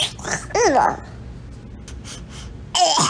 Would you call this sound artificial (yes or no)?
no